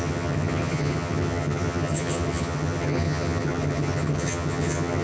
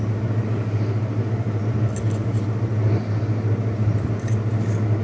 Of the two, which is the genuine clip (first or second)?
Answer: second